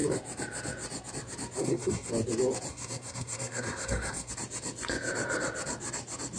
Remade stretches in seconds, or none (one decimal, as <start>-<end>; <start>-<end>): 1.6-2.1; 2.7-4.3